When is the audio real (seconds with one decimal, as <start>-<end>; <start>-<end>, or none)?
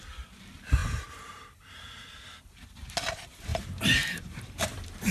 0.0-0.8; 2.2-3.5